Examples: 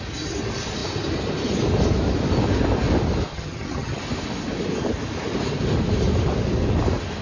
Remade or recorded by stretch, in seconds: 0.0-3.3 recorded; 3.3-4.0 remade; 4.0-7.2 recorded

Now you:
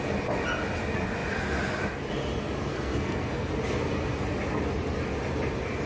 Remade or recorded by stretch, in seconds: 0.0-2.7 recorded; 2.7-3.5 remade; 3.5-5.9 recorded

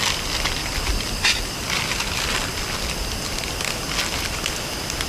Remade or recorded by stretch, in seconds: 0.0-0.6 recorded; 0.6-1.6 remade; 1.6-5.1 recorded

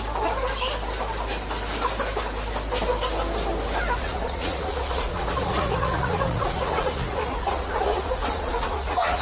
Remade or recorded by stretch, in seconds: 0.0-4.0 recorded; 4.0-9.2 remade

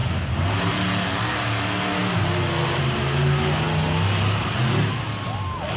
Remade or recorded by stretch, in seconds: 0.0-5.8 recorded